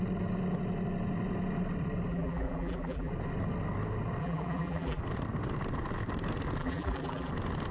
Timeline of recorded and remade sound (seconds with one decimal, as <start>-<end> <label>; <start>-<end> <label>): 0.0-2.1 recorded; 2.1-3.1 remade; 3.1-4.2 recorded; 4.2-5.0 remade; 5.0-6.6 recorded; 6.6-7.3 remade; 7.3-7.7 recorded